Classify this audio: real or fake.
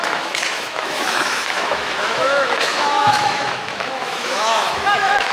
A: fake